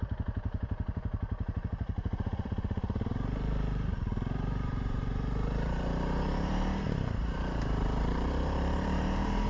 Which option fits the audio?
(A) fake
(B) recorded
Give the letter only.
A